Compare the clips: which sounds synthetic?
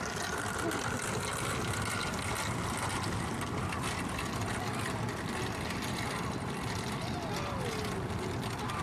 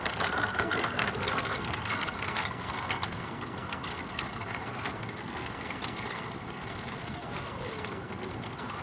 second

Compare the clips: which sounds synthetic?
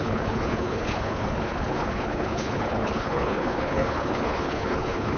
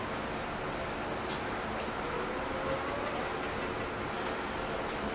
first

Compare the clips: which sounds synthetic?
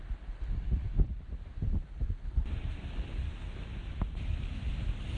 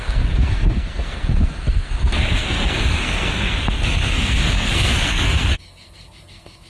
second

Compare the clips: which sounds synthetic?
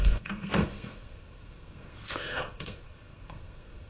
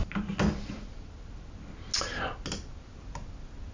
first